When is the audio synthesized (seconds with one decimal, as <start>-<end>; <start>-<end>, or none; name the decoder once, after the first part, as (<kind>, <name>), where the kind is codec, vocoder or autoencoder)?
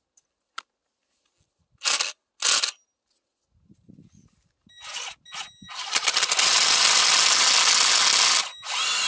none